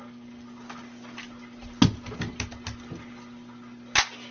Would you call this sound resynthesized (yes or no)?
no